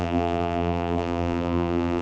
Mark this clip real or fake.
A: fake